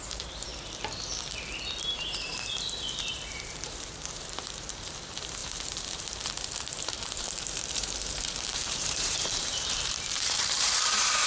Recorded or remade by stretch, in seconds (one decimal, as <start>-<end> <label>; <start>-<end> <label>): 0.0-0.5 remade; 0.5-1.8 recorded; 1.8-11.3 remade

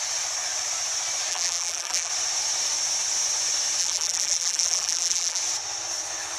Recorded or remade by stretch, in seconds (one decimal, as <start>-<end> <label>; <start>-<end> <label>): 0.0-1.3 recorded; 1.3-2.1 remade; 2.1-3.8 recorded; 3.8-5.4 remade; 5.4-6.4 recorded

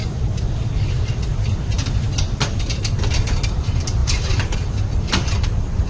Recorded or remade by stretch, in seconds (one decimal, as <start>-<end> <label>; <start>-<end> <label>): 0.0-4.0 recorded; 4.0-4.7 remade; 4.7-5.9 recorded